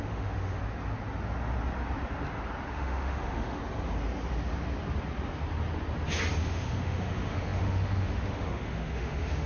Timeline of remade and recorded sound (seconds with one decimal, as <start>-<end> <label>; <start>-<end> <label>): 0.0-0.6 remade; 0.6-2.7 recorded; 2.7-3.6 remade; 3.6-6.4 recorded; 6.4-9.5 remade